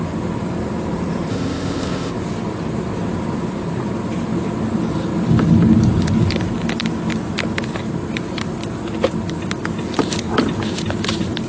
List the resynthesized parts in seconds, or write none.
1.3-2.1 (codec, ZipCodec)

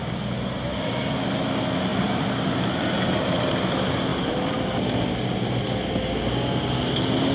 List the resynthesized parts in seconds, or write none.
none